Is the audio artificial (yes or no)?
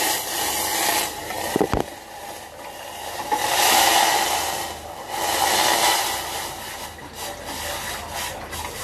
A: no